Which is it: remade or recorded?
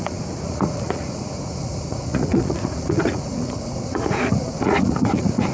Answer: remade